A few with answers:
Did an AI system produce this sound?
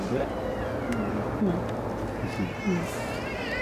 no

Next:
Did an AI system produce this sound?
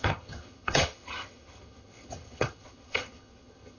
yes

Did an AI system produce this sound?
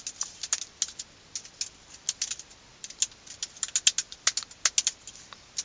no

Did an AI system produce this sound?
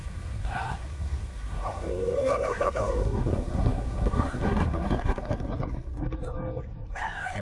yes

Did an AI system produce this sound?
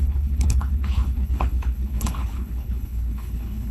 yes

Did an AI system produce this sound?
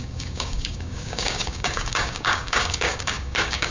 yes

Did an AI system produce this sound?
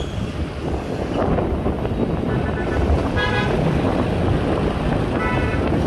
no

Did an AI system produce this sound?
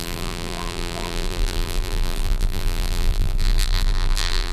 yes